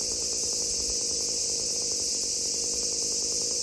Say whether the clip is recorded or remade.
recorded